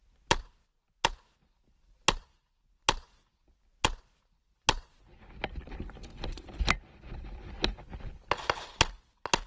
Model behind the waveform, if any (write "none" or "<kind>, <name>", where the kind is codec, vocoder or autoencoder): none